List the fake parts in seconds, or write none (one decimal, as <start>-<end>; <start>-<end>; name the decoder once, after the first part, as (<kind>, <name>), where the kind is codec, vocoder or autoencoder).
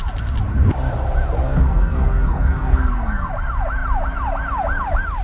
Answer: 1.4-3.3 (codec, SNAC)